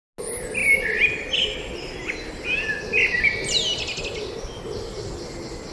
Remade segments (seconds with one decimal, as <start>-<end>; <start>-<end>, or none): none